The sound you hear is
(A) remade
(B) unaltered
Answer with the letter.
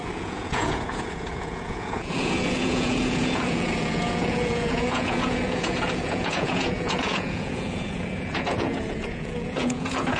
A